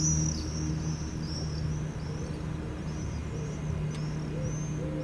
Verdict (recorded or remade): recorded